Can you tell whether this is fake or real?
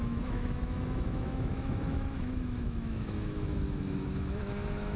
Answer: fake